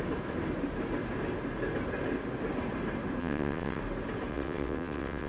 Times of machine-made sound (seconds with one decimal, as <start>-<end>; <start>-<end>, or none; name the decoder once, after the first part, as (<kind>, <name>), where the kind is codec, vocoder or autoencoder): 3.2-3.8 (vocoder, WaveNeXt); 4.3-5.3